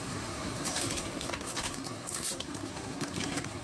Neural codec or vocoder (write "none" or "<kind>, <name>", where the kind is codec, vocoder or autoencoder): codec, SNAC